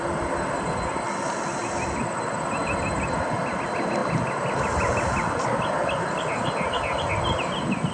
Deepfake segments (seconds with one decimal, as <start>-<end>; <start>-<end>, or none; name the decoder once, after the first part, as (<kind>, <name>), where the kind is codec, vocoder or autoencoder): none